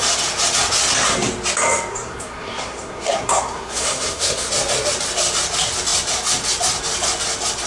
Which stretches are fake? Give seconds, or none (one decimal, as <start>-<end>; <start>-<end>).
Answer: 1.9-4.5

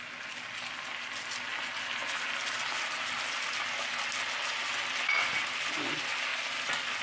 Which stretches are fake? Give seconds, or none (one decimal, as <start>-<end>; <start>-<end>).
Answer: none

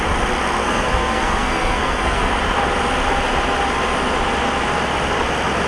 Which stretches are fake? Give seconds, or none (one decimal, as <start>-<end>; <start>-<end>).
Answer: 0.6-2.3

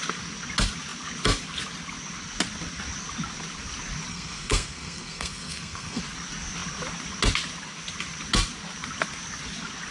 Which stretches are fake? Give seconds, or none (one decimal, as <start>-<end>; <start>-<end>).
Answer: 4.1-6.0